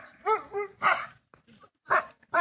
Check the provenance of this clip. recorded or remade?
remade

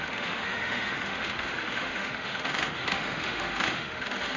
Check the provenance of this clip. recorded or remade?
remade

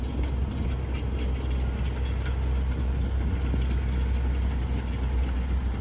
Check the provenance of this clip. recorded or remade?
recorded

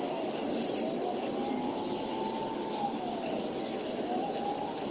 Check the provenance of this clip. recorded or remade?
recorded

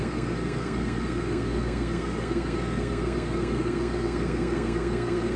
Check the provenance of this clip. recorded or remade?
remade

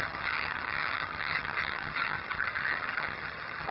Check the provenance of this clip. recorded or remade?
remade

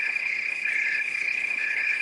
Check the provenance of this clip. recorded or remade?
remade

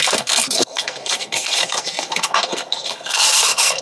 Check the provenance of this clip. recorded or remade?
remade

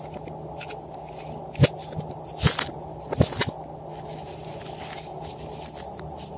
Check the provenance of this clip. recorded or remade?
recorded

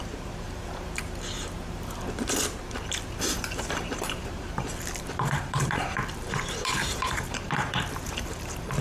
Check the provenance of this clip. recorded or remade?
remade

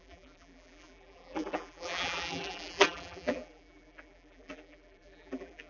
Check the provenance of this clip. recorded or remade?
remade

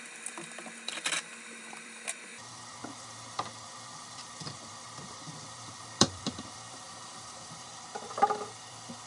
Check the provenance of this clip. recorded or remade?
remade